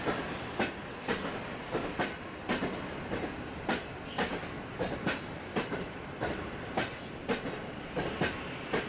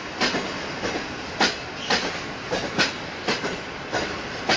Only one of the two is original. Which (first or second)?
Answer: second